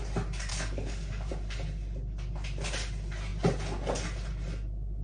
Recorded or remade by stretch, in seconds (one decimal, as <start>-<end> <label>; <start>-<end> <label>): 0.0-0.5 recorded; 0.5-1.3 remade; 1.3-5.0 recorded